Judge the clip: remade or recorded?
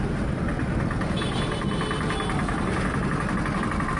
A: recorded